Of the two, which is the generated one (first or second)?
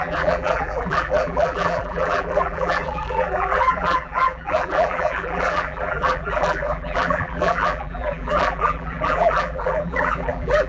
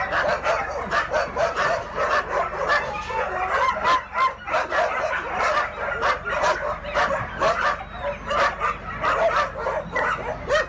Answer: first